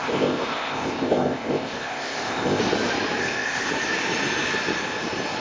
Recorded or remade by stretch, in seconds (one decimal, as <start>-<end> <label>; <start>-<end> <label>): 0.0-2.6 remade; 2.6-3.2 recorded; 3.2-3.7 remade; 3.7-5.4 recorded